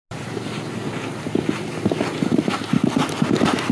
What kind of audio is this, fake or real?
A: real